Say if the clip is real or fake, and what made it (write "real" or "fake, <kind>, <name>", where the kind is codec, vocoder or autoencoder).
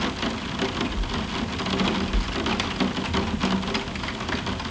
real